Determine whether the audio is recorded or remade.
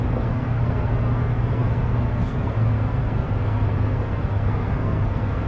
remade